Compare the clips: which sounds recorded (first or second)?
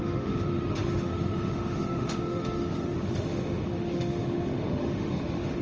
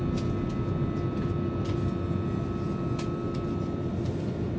second